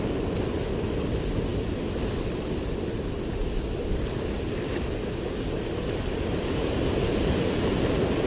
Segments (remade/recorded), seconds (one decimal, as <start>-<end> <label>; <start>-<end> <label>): 0.0-5.0 recorded; 5.0-5.6 remade; 5.6-8.3 recorded

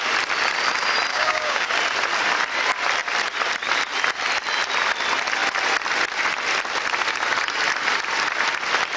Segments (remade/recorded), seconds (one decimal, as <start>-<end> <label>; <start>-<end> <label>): 0.0-1.1 recorded; 1.1-1.7 remade; 1.7-9.0 recorded

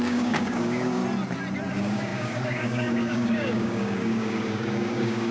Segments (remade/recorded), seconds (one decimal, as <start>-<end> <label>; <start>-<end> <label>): 0.0-1.0 remade; 1.0-1.7 recorded; 1.7-5.3 remade